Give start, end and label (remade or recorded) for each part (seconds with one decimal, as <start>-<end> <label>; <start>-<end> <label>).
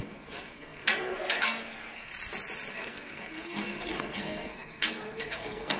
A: 0.0-2.1 remade; 2.1-2.7 recorded; 2.7-5.8 remade